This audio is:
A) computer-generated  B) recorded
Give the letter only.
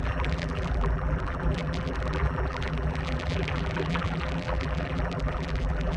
A